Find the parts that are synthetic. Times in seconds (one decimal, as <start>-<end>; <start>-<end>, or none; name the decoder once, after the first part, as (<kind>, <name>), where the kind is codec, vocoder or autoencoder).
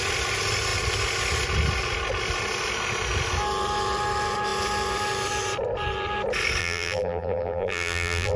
6.6-8.4 (vocoder, BigVGAN v2)